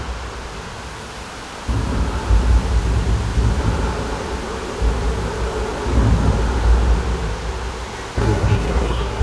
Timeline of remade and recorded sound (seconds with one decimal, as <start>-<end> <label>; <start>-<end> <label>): 0.0-8.2 recorded; 8.2-9.2 remade